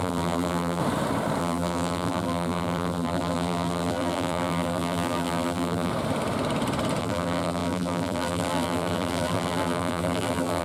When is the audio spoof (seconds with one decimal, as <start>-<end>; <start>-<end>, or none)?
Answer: 0.0-0.8; 1.4-5.9; 7.0-10.6